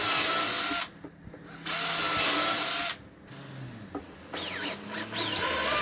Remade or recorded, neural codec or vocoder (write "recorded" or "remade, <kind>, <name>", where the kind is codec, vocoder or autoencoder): recorded